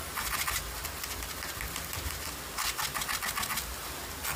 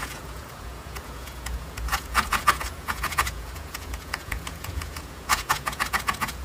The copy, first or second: second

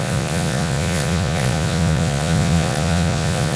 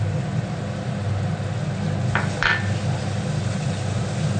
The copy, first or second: first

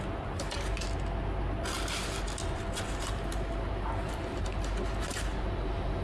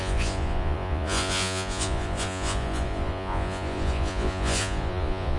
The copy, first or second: second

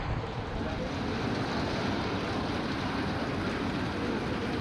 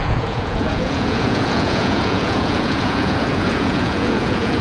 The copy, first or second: second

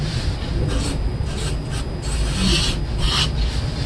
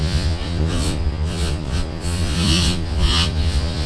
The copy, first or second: second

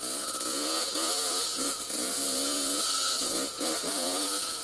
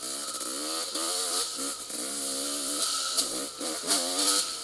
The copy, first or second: first